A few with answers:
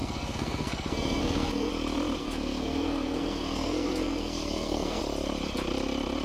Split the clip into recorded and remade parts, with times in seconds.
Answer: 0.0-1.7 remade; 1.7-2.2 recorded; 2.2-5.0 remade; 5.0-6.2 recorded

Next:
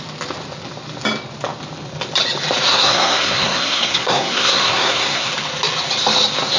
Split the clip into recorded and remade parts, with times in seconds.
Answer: 0.0-2.7 recorded; 2.7-5.3 remade; 5.3-6.6 recorded

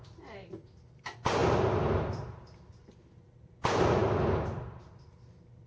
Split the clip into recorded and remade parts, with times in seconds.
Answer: 0.0-5.7 recorded

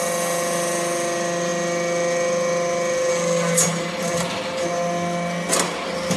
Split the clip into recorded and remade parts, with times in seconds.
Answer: 0.0-6.2 recorded

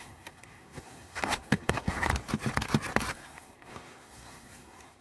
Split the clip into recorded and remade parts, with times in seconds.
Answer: 0.0-2.1 remade; 2.1-3.1 recorded; 3.1-5.0 remade